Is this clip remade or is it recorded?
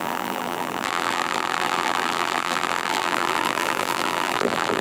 remade